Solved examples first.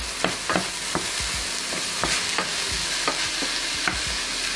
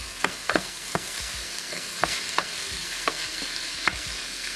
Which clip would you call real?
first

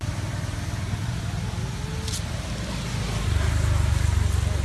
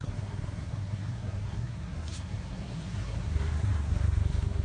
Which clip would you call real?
first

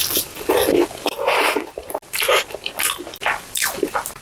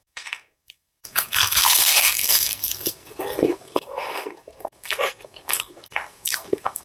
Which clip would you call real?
first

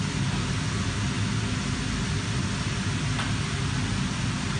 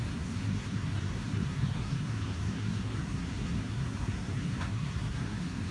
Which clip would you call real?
first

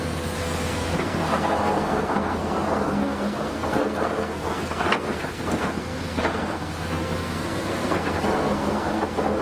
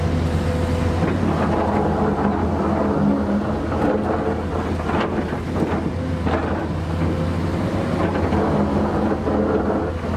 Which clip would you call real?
second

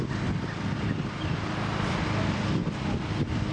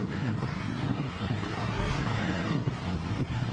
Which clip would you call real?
first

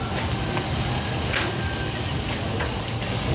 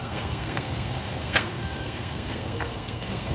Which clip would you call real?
first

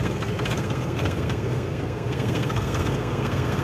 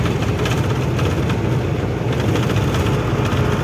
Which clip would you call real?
second